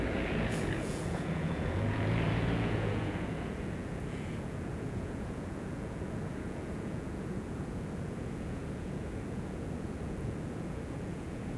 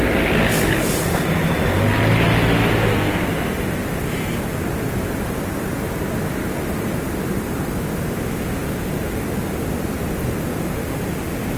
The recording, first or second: second